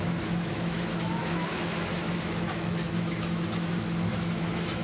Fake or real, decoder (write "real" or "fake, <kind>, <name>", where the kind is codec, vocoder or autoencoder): fake, autoencoder, DAC-VAE